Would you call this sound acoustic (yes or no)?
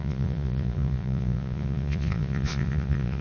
no